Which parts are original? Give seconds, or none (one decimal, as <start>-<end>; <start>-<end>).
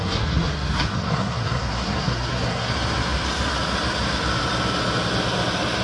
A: 2.7-5.8